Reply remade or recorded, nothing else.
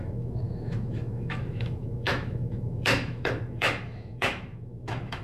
remade